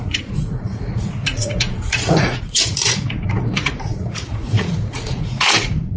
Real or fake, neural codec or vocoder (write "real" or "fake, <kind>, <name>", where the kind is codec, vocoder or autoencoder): fake, vocoder, Vocos